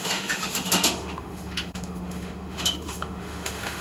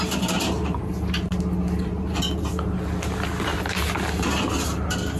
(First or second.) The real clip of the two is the second